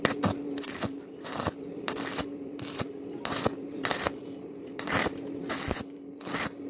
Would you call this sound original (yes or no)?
no